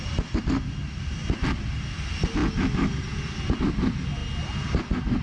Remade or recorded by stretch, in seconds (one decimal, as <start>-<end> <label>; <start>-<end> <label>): 0.0-5.2 recorded